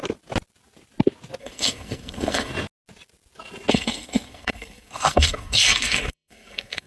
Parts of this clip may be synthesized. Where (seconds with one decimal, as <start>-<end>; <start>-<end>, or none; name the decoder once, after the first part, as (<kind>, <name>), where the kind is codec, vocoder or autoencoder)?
1.4-2.5 (codec, SNAC); 3.7-6.9